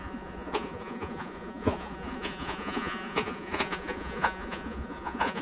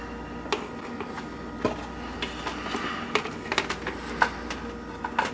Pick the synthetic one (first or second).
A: first